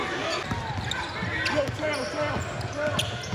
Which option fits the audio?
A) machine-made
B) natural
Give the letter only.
B